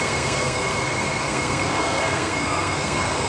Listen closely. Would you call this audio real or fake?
fake